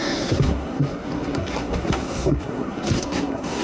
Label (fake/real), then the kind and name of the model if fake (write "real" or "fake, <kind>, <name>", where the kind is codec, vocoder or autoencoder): fake, codec, SNAC